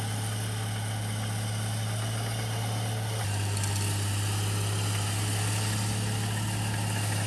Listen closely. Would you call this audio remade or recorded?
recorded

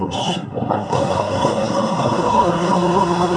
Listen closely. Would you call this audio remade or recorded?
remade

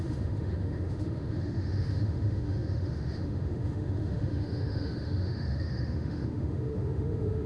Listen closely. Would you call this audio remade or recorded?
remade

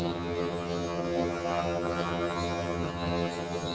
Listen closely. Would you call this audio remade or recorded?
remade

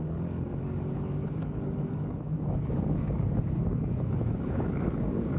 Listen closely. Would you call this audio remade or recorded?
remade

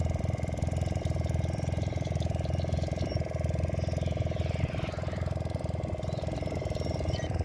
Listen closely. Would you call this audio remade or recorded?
remade